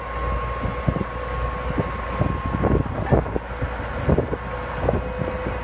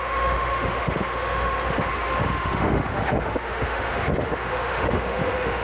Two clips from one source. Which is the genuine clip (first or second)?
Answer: first